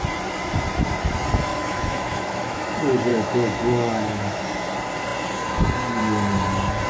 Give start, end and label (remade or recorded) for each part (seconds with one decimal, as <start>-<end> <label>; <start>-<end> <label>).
0.0-1.5 recorded; 1.5-2.6 remade; 2.6-3.1 recorded; 3.1-4.4 remade; 4.4-6.9 recorded